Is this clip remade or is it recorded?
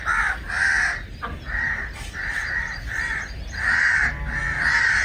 recorded